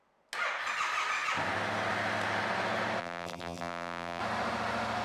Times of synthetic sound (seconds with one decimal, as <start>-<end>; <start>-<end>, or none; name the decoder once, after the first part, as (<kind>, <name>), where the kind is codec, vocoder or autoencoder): 3.0-4.2 (vocoder, BigVGAN v2)

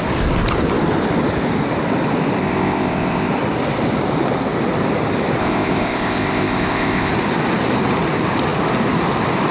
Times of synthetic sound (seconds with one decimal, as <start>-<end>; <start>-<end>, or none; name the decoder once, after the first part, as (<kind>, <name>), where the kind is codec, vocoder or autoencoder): 2.4-3.3 (codec, ZipCodec); 5.4-7.1

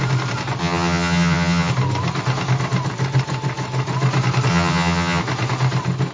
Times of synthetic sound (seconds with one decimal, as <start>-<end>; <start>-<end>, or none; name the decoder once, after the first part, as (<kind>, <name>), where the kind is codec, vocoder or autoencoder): 0.6-1.7 (vocoder, HiFi-GAN); 4.5-5.2

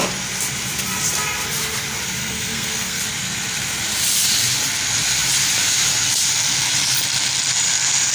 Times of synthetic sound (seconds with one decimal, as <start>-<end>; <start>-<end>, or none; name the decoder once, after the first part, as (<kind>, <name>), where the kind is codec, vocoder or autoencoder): 2.2-3.0 (codec, SNAC)